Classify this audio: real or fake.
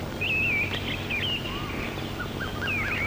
real